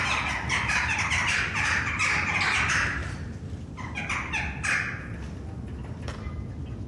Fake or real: real